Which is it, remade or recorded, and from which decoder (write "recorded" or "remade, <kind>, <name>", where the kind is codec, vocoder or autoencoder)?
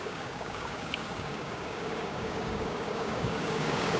remade, codec, DAC